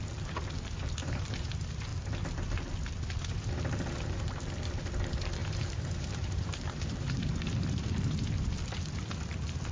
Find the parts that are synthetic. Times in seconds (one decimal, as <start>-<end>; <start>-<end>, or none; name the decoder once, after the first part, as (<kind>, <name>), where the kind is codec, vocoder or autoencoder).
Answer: 1.0-1.5 (vocoder, BigVGAN v2); 5.4-7.3